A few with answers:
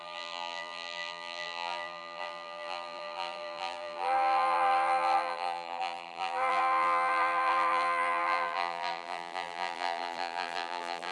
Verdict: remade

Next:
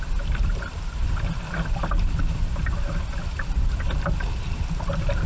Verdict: recorded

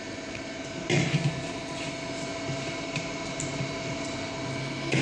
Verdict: recorded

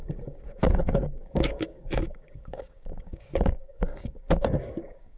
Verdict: remade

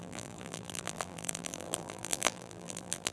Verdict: remade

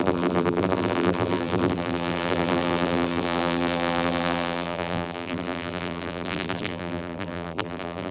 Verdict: remade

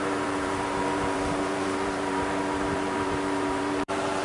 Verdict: remade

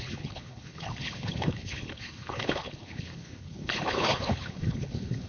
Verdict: remade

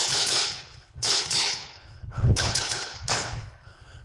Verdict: remade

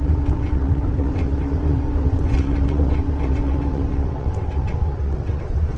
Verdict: remade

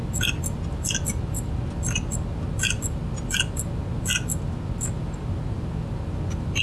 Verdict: recorded